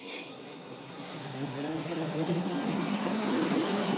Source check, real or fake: fake